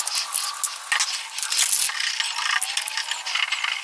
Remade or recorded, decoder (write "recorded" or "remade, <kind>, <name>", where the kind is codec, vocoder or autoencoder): recorded